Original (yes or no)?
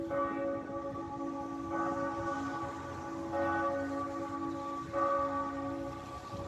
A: yes